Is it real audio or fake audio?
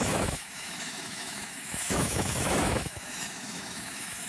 fake